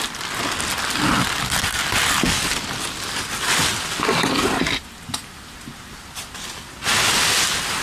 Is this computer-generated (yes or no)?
no